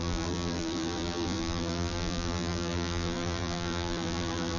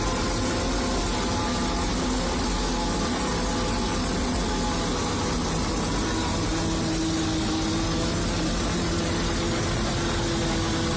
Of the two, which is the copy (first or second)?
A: first